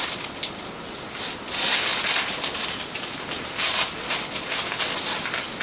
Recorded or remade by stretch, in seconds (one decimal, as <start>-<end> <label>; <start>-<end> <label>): 0.0-5.6 recorded